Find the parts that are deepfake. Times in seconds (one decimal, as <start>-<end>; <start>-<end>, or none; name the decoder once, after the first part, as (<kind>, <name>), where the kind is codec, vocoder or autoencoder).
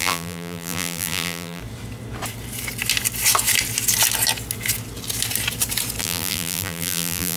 0.0-1.6 (vocoder, BigVGAN v2); 6.0-7.4